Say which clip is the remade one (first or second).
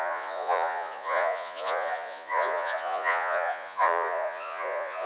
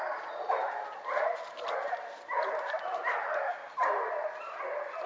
first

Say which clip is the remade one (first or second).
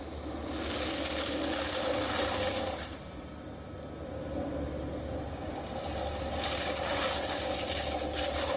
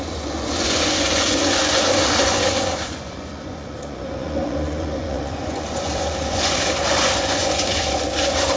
second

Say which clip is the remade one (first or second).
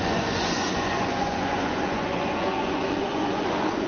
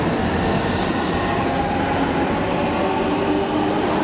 first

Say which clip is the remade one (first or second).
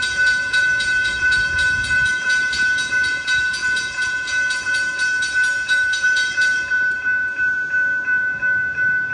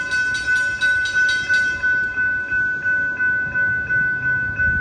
first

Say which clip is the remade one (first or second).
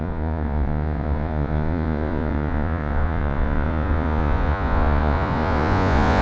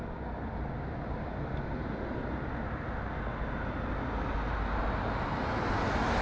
first